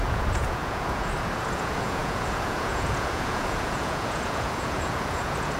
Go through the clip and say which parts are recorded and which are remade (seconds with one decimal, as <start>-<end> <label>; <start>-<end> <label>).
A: 0.0-5.6 remade